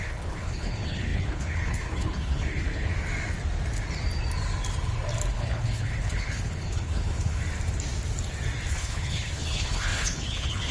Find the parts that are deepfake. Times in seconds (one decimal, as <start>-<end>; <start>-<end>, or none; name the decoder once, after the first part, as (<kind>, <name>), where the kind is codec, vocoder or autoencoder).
0.0-2.9 (codec, HILCodec); 5.3-7.4; 8.7-10.7

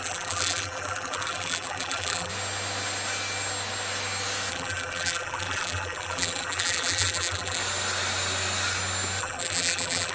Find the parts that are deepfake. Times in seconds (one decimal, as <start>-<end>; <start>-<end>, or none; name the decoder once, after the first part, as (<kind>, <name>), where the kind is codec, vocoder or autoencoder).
0.0-2.3 (vocoder, BigVGAN v2); 4.5-7.6; 9.2-10.1